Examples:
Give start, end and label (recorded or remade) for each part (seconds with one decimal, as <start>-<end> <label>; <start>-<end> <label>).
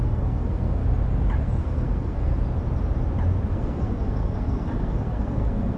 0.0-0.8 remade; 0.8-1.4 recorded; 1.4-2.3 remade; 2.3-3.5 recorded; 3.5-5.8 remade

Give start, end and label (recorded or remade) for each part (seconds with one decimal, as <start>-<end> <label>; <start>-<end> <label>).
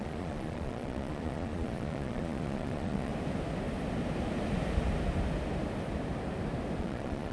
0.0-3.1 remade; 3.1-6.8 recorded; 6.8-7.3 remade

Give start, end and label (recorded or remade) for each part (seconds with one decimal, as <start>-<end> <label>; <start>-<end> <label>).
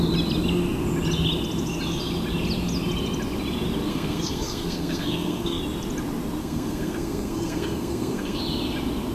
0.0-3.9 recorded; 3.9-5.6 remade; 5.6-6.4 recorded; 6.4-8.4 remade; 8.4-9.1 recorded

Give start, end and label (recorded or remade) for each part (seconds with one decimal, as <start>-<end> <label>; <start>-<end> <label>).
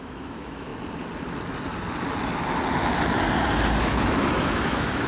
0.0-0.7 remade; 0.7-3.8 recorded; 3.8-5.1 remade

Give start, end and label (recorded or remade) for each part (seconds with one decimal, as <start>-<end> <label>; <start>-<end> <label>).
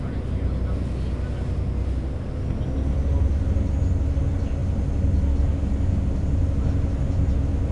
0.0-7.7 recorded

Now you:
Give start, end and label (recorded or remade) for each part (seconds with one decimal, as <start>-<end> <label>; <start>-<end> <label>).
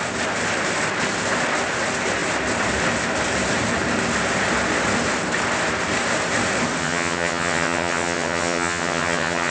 0.0-6.8 recorded; 6.8-9.5 remade